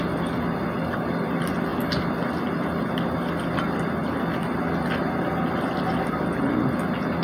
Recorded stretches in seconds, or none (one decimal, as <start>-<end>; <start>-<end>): 0.0-7.2